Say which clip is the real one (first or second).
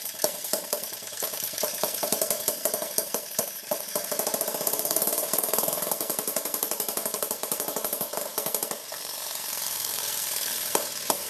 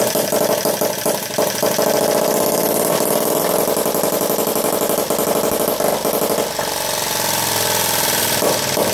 second